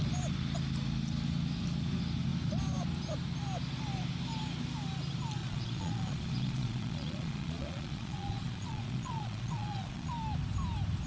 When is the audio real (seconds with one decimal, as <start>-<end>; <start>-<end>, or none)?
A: 0.0-5.4; 10.1-11.1